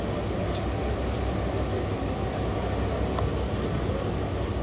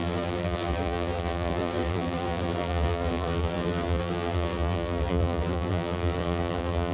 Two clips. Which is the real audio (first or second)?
first